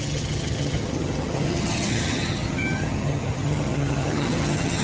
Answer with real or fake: fake